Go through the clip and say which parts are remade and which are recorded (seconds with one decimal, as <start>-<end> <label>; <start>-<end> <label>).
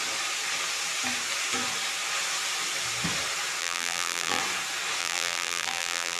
0.0-3.6 recorded; 3.6-4.4 remade; 4.4-5.0 recorded; 5.0-6.2 remade